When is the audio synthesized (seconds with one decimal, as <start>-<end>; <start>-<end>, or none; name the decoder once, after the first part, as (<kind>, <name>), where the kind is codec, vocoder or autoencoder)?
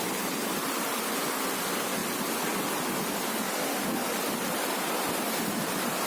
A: none